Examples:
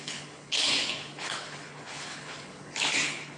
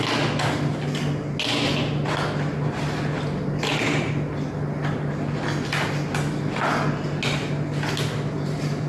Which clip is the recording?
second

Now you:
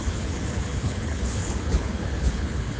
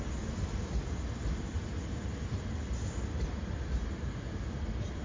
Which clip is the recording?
second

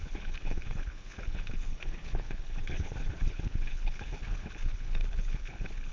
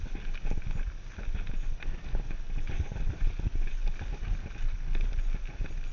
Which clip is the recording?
second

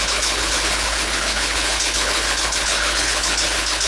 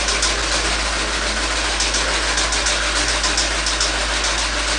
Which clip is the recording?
second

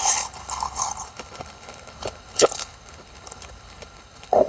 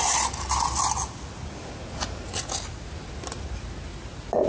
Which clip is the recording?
second